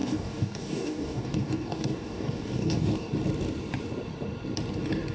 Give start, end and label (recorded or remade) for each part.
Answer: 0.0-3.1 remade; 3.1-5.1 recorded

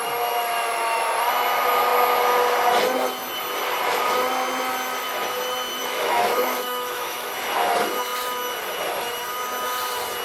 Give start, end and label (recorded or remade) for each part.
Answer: 0.0-5.8 recorded; 5.8-7.3 remade; 7.3-10.2 recorded